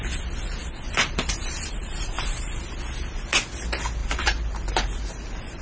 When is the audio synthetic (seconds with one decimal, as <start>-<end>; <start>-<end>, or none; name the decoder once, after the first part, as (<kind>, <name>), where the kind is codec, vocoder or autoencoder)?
0.6-2.6 (vocoder, BigVGAN v2); 4.0-5.6